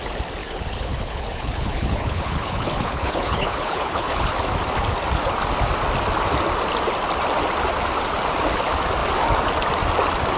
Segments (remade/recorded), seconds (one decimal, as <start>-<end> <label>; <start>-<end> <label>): 0.0-0.4 recorded; 0.4-4.3 remade; 4.3-10.4 recorded